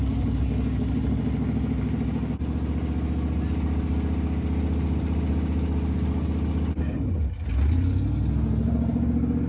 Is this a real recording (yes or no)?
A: yes